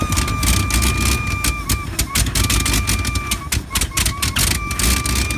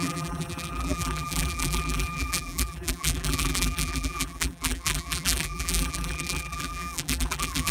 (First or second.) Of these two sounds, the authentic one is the first